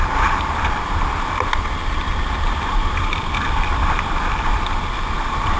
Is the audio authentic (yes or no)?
no